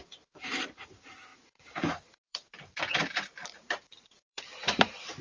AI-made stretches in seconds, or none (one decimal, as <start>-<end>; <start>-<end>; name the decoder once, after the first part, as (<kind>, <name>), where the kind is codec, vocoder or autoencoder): 0.0-5.2 (vocoder, BigVGAN v2)